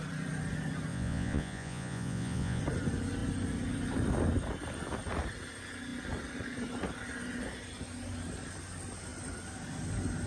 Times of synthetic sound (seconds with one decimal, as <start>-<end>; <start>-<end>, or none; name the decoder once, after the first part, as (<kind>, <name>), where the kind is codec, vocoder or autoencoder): 0.9-2.6 (vocoder, Vocos)